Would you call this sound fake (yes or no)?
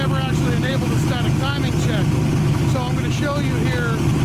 no